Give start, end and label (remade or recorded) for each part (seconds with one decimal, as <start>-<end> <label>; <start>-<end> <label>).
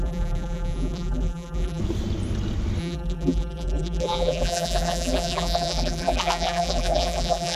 0.0-1.8 remade; 1.8-2.8 recorded; 2.8-7.6 remade